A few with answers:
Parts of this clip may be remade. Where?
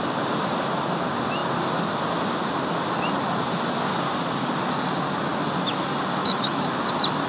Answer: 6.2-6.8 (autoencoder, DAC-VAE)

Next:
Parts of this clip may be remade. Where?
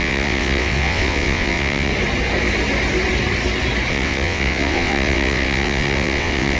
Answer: 0.0-1.9 (vocoder, WaveNeXt); 3.9-6.6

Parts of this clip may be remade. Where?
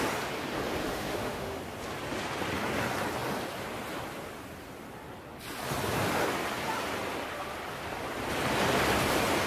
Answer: 0.8-1.6 (autoencoder, DAC-VAE)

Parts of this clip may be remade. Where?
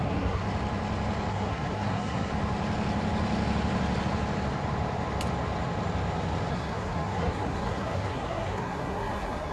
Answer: 0.0-0.4 (codec, SNAC); 1.3-2.3; 6.5-9.5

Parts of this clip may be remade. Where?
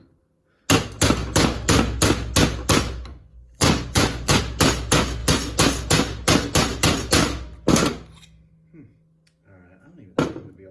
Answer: 3.1-4.4 (vocoder, Vocos)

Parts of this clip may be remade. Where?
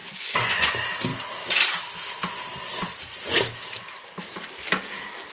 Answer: 0.0-0.7 (vocoder, Vocos)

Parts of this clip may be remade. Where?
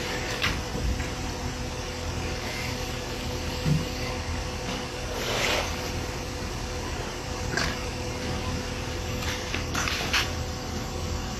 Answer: 0.0-0.7 (codec, DAC); 1.7-11.4